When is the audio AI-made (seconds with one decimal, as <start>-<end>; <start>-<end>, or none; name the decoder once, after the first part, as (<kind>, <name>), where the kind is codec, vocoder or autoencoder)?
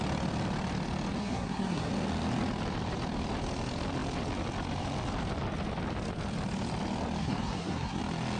1.2-1.9 (codec, SNAC); 7.2-8.0